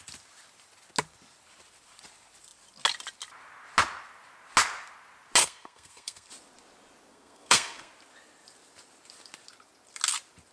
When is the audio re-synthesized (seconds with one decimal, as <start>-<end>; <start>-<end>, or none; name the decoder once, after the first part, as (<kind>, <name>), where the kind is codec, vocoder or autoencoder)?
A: 5.4-6.3 (codec, SNAC); 7.1-7.9